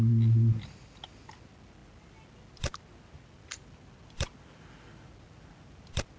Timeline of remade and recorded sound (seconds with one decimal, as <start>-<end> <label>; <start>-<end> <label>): 0.0-6.2 recorded